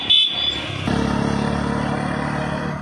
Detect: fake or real real